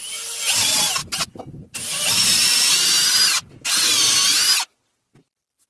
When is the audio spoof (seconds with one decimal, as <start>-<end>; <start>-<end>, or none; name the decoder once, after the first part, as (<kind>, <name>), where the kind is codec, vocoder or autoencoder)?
none